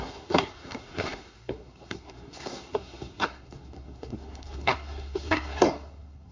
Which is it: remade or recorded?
remade